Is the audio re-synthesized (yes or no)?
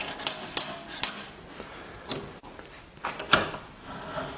no